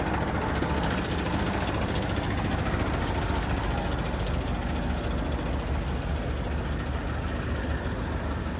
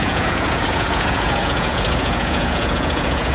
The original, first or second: first